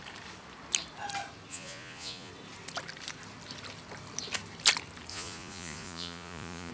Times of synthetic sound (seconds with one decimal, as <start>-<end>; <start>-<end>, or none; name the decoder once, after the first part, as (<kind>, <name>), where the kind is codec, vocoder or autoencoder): 1.5-2.3 (vocoder, Vocos); 5.1-6.7